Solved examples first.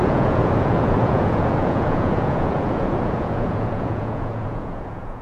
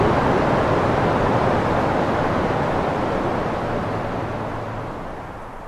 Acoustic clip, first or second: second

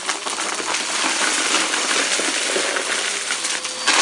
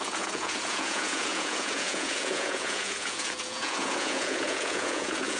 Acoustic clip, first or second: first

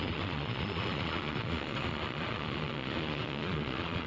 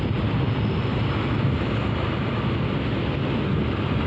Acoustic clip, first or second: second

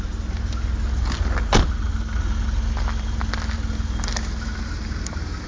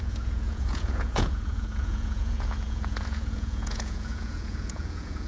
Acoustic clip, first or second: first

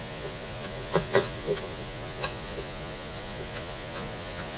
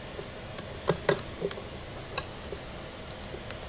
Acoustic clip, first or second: second